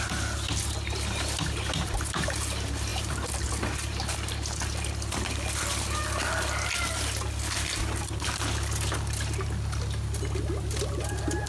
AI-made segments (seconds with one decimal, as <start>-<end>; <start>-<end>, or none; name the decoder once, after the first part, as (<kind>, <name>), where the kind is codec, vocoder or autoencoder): none